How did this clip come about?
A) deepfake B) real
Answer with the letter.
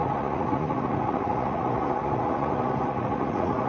A